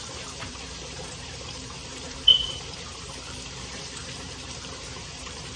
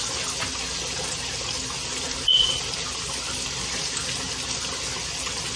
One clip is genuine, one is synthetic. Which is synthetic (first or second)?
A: first